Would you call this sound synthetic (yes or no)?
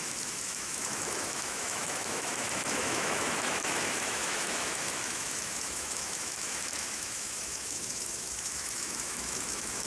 yes